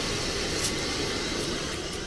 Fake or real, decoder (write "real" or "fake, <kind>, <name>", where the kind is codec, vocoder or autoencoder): real